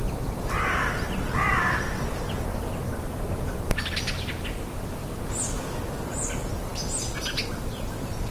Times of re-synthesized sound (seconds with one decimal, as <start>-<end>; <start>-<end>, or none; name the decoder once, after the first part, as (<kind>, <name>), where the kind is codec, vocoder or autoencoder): none